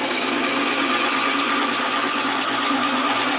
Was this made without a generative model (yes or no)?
no